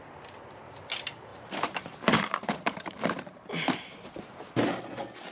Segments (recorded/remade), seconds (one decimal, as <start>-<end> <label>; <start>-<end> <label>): 0.0-1.3 recorded; 1.3-4.1 remade; 4.1-5.3 recorded